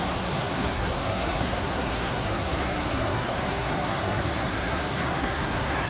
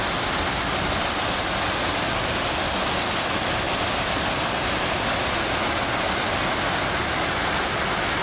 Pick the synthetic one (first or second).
first